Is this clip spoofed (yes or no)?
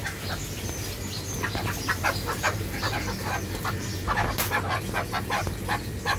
no